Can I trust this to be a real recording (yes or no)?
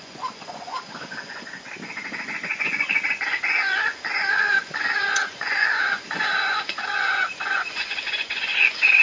no